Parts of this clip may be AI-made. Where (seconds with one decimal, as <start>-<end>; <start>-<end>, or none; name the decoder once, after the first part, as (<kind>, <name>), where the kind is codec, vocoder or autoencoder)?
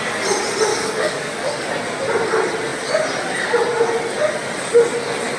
0.7-1.7 (codec, DAC)